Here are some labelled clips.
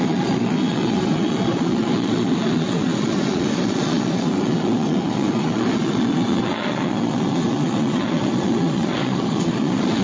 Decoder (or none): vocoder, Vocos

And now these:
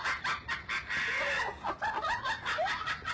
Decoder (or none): none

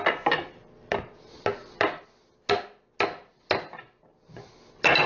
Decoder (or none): none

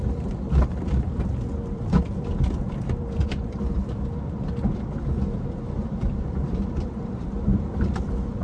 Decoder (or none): vocoder, BigVGAN v2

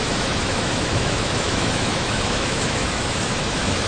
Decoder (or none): autoencoder, DAC-VAE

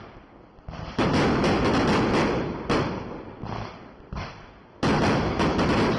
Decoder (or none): none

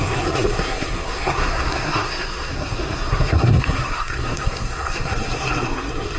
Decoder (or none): codec, SNAC